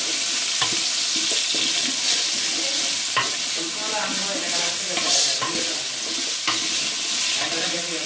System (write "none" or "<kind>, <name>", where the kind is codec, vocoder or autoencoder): none